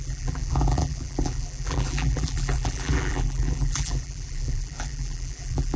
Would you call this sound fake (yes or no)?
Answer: yes